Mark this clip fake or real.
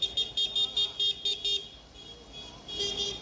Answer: real